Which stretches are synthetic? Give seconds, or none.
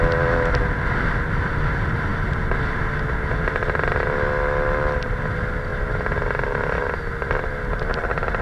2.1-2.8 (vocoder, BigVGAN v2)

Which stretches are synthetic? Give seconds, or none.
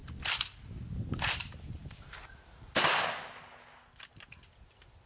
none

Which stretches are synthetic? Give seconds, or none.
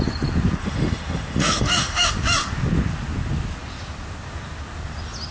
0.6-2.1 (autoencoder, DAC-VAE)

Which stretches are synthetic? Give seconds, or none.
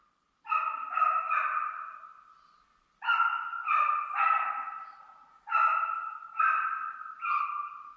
none